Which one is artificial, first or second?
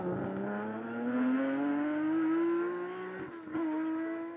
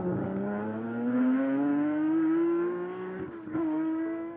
second